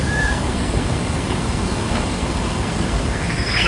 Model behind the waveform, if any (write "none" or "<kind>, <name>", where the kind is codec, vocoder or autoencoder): codec, SNAC